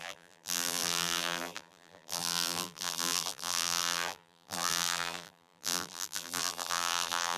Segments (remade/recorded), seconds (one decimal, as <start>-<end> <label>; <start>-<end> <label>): 0.0-7.4 remade

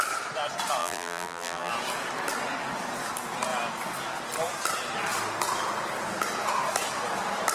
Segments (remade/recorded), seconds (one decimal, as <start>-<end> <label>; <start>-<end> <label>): 0.0-0.8 recorded; 0.8-1.7 remade; 1.7-7.5 recorded

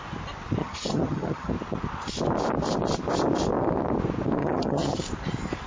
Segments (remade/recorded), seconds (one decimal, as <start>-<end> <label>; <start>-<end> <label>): 0.0-0.6 recorded; 0.6-1.5 remade; 1.5-4.4 recorded; 4.4-5.0 remade; 5.0-5.7 recorded

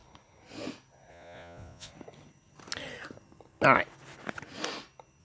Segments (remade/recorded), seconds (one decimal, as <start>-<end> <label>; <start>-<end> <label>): 0.0-1.1 recorded; 1.1-1.9 remade; 1.9-5.2 recorded